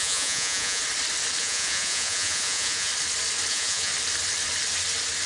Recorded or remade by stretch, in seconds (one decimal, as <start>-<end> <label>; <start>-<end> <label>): 0.0-0.8 remade; 0.8-1.4 recorded; 1.4-2.9 remade; 2.9-3.5 recorded; 3.5-3.9 remade; 3.9-5.3 recorded